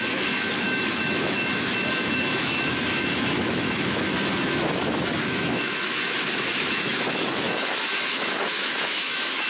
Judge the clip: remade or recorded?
remade